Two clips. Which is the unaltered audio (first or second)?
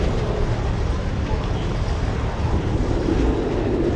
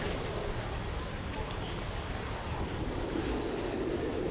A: first